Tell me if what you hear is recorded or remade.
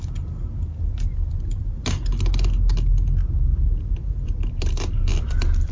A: recorded